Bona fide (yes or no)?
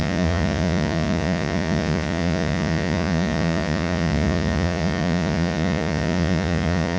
no